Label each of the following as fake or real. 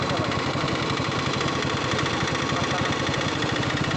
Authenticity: real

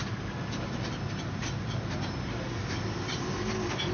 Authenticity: real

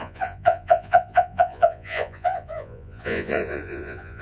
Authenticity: fake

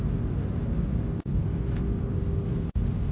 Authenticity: real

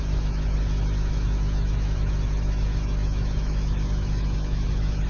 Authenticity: fake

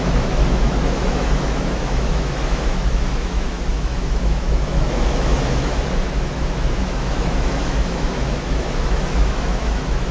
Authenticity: fake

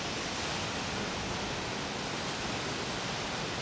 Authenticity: real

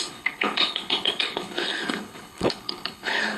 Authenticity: fake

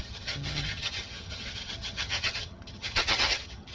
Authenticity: fake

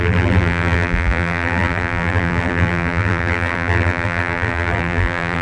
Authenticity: fake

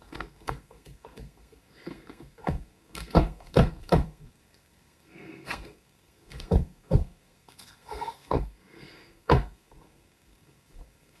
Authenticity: fake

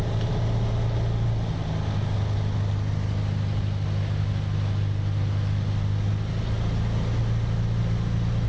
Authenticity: real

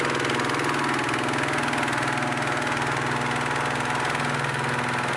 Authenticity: real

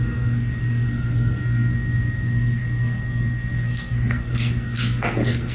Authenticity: fake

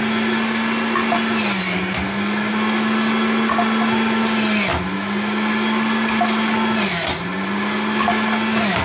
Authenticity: real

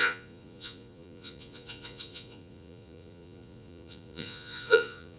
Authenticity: fake